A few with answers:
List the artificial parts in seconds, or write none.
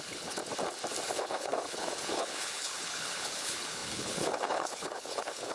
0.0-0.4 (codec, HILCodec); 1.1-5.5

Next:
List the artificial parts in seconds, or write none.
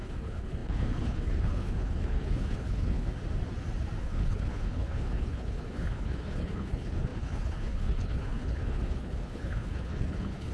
0.0-3.2 (codec, HILCodec); 4.0-10.5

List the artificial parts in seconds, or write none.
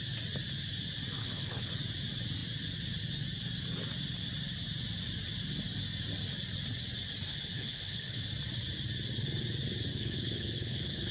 1.2-1.7 (codec, HILCodec); 7.3-8.2; 9.9-11.1